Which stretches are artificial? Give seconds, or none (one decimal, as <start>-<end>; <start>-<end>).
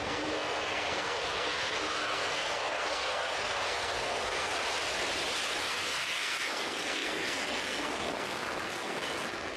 0.0-4.5; 5.6-9.6